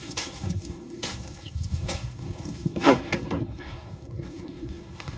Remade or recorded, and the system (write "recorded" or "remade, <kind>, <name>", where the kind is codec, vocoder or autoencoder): remade, codec, SNAC